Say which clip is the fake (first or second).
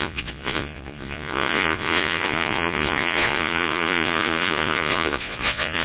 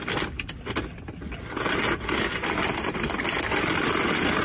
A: first